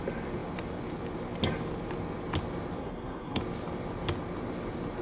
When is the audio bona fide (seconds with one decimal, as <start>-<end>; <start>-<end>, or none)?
0.0-2.8; 3.4-5.0